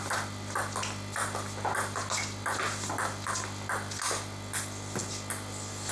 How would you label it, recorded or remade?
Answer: recorded